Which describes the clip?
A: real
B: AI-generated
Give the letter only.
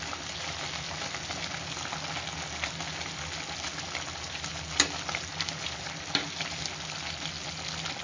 A